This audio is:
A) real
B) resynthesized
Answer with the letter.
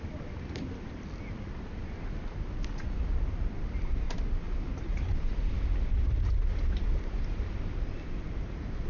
A